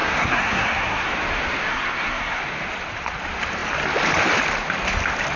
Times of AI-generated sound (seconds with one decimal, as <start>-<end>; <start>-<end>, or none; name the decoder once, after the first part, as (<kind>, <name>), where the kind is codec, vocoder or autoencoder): 0.0-1.1 (codec, SNAC); 1.7-2.4